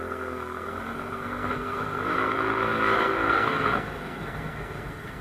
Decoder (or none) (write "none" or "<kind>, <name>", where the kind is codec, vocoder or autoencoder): codec, SNAC